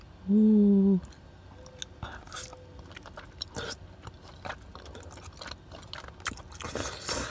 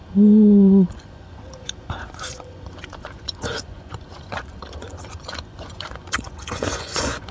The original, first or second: first